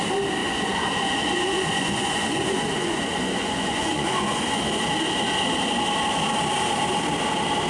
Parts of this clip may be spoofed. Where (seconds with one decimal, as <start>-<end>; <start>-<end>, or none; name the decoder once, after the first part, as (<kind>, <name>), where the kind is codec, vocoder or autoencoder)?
0.4-4.6 (vocoder, Vocos)